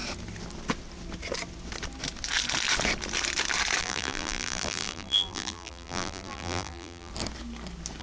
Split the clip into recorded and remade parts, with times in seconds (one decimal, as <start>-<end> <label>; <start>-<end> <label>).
0.0-3.8 recorded; 3.8-7.1 remade; 7.1-8.0 recorded